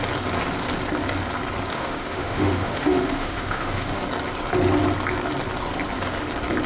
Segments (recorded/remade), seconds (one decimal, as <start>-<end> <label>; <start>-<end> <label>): 0.0-1.7 recorded; 1.7-4.0 remade; 4.0-6.7 recorded